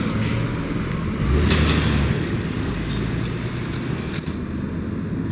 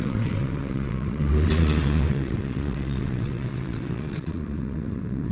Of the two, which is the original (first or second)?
first